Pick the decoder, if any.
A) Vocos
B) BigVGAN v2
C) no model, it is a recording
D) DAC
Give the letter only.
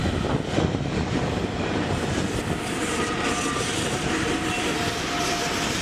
C